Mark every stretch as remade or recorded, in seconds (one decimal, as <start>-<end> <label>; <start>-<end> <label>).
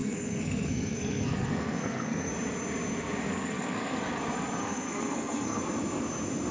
0.0-2.3 remade; 2.3-3.3 recorded; 3.3-4.0 remade; 4.0-4.6 recorded; 4.6-5.6 remade; 5.6-6.5 recorded